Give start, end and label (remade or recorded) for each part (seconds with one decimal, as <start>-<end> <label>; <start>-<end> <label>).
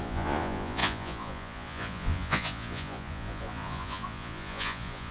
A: 0.0-5.1 remade